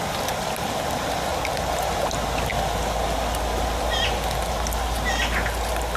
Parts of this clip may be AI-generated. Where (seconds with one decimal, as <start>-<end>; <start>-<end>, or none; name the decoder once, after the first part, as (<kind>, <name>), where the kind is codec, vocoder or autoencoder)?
none